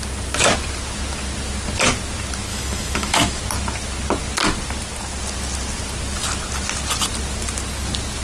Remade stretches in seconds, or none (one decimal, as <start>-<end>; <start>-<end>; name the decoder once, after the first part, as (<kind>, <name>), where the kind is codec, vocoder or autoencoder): 2.5-3.4 (autoencoder, DAC-VAE)